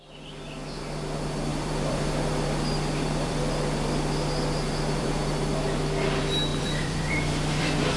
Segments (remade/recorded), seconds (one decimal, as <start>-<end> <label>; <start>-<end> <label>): 0.0-1.5 recorded; 1.5-5.5 remade; 5.5-6.5 recorded; 6.5-8.0 remade